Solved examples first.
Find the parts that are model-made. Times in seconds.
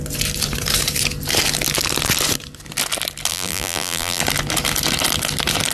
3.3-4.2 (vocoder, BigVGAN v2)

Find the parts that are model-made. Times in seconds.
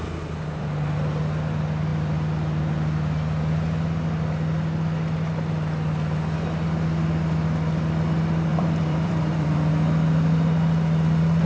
8.5-9.7 (vocoder, BigVGAN v2)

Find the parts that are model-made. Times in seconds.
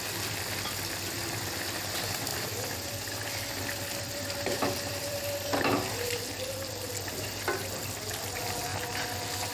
2.3-6.2 (vocoder, BigVGAN v2)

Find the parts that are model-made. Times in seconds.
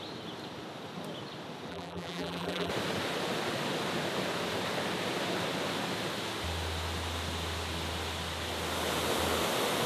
1.7-2.7 (vocoder, BigVGAN v2)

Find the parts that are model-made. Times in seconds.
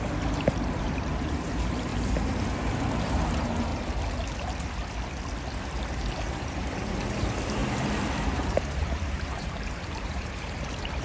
0.0-1.9 (vocoder, BigVGAN v2); 2.8-3.7; 6.3-7.6; 8.3-11.0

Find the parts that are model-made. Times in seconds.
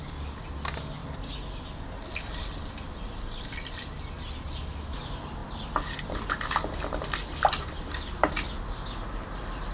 none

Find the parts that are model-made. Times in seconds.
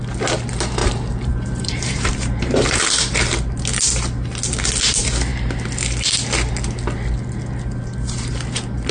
0.8-2.8 (vocoder, BigVGAN v2)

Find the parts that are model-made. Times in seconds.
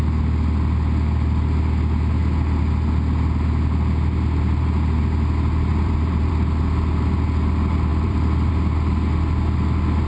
5.7-6.3 (vocoder, BigVGAN v2); 7.9-8.5